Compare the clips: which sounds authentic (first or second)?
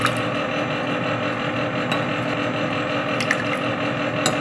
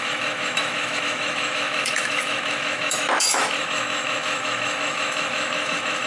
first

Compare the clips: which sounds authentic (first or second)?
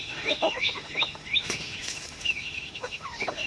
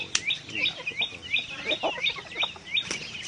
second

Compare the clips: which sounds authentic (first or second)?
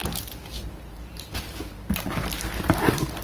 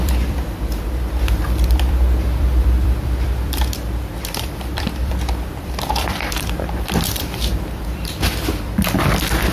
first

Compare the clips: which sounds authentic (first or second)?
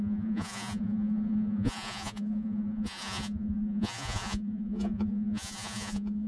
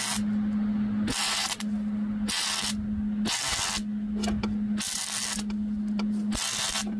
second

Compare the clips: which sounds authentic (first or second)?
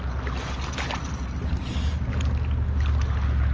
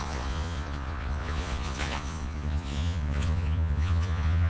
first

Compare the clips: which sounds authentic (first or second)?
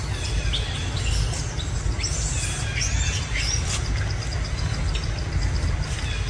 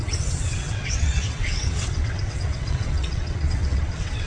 first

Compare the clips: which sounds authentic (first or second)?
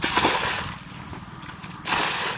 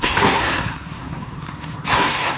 first